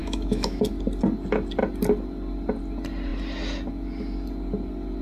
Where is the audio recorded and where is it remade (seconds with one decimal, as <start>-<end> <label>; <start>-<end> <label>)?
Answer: 0.0-0.6 remade; 0.6-5.0 recorded